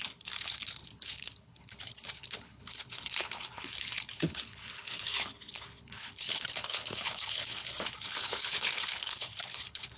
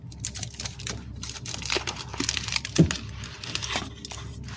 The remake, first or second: first